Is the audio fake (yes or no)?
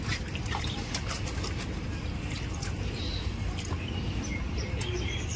no